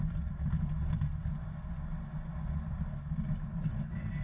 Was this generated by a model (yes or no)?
no